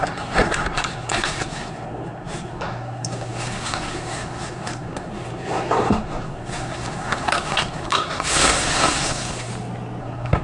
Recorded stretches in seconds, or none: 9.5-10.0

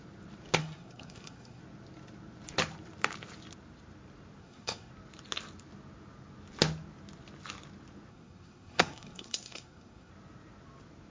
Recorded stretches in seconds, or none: 0.0-0.6; 1.6-4.4; 4.9-8.1; 10.1-11.1

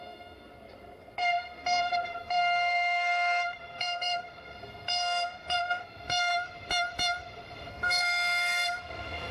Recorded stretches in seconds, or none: 6.3-7.7